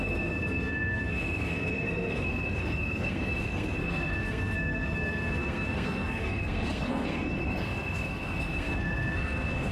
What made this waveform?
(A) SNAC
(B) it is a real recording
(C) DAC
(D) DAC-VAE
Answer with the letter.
A